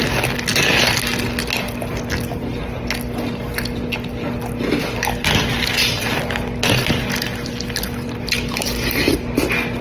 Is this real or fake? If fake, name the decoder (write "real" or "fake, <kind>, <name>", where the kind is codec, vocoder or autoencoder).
real